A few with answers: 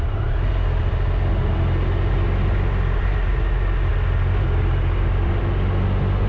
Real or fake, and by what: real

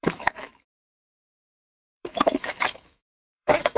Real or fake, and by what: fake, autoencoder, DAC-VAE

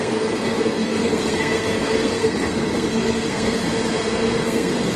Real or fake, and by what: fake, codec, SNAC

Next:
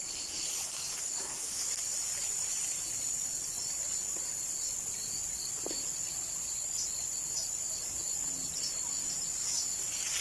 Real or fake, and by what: real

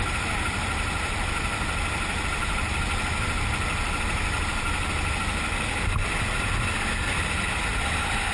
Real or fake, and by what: real